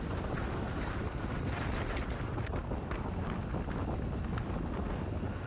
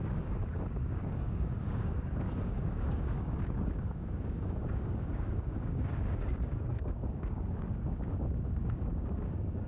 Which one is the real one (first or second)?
first